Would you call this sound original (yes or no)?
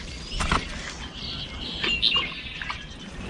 yes